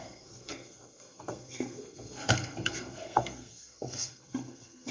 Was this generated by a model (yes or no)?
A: yes